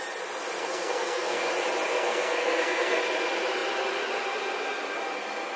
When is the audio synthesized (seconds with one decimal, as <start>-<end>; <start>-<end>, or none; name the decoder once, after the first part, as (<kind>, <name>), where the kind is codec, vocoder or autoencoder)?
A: 0.6-1.5 (codec, SNAC); 1.9-3.0